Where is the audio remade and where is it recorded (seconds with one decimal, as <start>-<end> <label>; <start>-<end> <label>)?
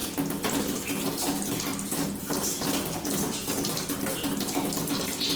0.0-5.4 recorded